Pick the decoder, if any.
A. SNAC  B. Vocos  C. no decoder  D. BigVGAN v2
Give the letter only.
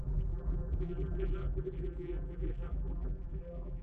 D